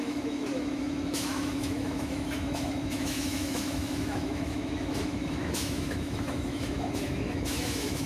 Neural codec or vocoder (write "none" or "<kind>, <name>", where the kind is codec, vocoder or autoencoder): autoencoder, DAC-VAE